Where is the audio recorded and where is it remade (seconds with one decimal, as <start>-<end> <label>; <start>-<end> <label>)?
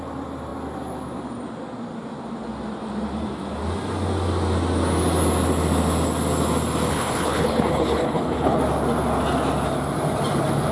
0.0-6.9 recorded; 6.9-8.6 remade; 8.6-10.7 recorded